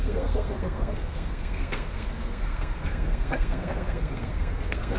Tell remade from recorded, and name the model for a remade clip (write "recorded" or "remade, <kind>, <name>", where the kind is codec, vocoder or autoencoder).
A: remade, codec, SNAC